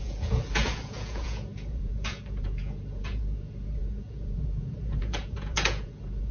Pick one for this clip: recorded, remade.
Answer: remade